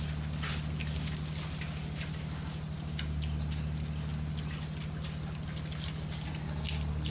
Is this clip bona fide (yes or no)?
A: yes